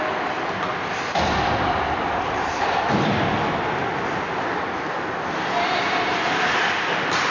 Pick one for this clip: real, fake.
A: real